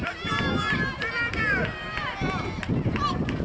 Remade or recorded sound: recorded